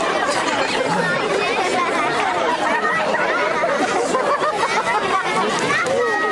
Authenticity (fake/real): real